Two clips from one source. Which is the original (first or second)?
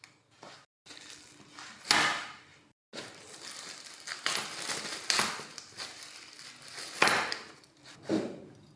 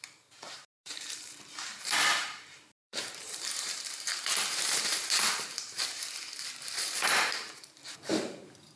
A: first